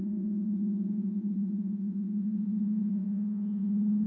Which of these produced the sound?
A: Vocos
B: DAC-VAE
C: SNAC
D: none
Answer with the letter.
A